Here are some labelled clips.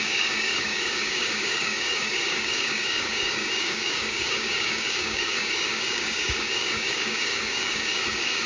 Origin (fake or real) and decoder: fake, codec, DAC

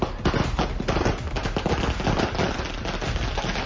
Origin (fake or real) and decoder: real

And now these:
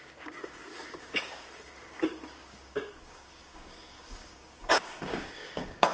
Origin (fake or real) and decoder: fake, codec, DAC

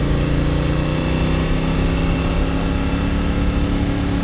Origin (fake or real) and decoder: real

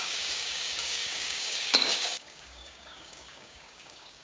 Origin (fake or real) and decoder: fake, codec, DAC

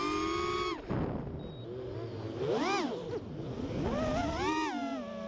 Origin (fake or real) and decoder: real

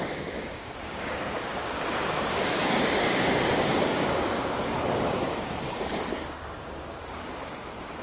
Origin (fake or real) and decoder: fake, codec, DAC